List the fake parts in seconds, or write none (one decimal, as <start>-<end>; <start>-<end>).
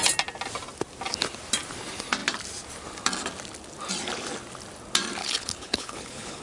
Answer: 5.2-6.4